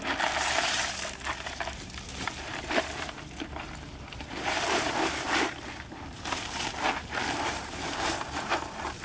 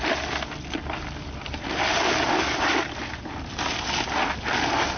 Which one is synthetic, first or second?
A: first